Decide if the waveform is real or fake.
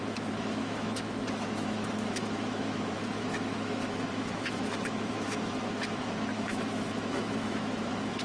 fake